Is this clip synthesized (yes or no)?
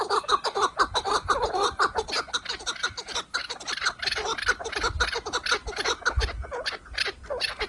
no